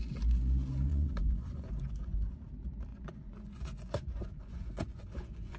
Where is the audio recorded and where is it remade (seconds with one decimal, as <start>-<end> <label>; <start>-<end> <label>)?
0.0-0.9 recorded; 0.9-2.3 remade; 2.3-2.9 recorded; 2.9-5.6 remade

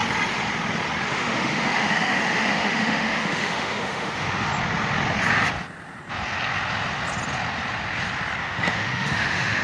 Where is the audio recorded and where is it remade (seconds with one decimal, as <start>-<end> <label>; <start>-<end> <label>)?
0.0-1.1 recorded; 1.1-4.5 remade; 4.5-8.4 recorded; 8.4-9.6 remade

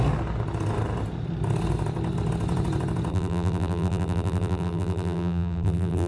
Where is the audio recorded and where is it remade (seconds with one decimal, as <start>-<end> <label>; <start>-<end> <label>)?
0.0-3.1 recorded; 3.1-6.1 remade

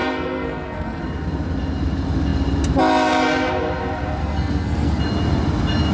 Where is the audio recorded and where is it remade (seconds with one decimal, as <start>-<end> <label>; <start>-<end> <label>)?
0.0-1.0 remade; 1.0-4.2 recorded; 4.2-5.0 remade; 5.0-5.9 recorded

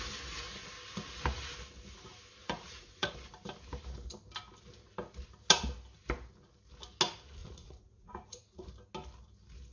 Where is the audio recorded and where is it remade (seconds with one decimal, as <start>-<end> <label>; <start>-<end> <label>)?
0.0-2.4 recorded; 2.4-3.1 remade; 3.1-7.4 recorded; 7.4-8.7 remade; 8.7-9.7 recorded